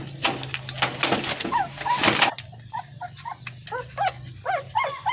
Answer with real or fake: real